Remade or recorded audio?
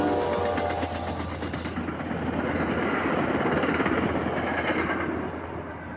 recorded